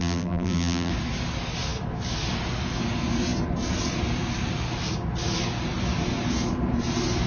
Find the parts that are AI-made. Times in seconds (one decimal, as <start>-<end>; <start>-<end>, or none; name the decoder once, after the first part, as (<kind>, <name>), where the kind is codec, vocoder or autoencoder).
0.0-0.9 (vocoder, BigVGAN v2)